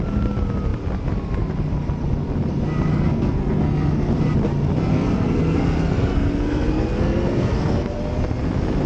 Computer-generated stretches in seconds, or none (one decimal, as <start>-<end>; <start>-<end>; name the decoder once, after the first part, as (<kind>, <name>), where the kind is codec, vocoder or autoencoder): 2.9-4.1 (codec, SNAC); 4.9-8.0

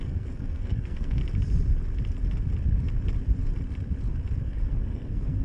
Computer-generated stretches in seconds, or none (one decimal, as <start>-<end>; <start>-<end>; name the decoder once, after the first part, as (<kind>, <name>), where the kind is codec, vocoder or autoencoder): 0.0-1.2 (codec, SNAC); 4.4-5.4

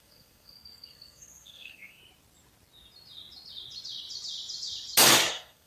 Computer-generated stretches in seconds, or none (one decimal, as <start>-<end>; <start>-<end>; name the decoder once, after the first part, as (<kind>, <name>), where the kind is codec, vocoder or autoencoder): 0.0-2.0 (codec, SNAC); 5.3-5.7

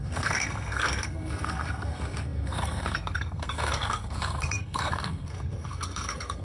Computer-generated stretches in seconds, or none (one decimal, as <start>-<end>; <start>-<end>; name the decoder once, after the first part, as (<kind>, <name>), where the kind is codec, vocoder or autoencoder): 0.0-6.4 (codec, SNAC)

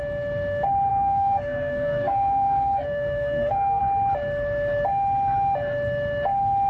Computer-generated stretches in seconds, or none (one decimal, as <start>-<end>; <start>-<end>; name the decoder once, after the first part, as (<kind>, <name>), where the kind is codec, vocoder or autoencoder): 0.9-3.8 (codec, SNAC)

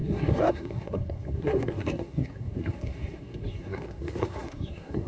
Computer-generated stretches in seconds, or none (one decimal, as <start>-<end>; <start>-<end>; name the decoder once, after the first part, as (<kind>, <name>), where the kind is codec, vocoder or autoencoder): 0.0-5.1 (codec, SNAC)

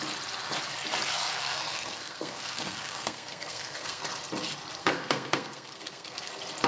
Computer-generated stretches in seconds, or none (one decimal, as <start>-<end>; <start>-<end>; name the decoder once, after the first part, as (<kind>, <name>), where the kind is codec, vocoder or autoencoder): 1.3-4.0 (codec, SNAC); 4.8-6.3